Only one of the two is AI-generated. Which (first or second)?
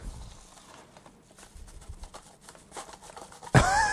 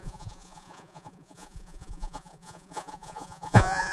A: second